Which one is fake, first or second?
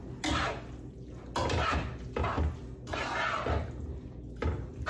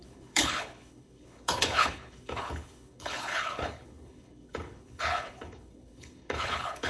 second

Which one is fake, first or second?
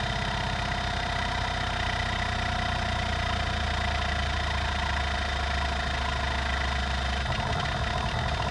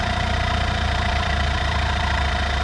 second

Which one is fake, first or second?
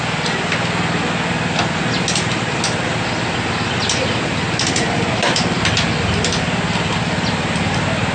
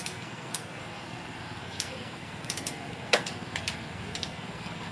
second